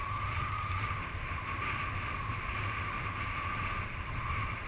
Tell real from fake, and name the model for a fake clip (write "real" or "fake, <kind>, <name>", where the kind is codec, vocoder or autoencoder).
fake, vocoder, BigVGAN v2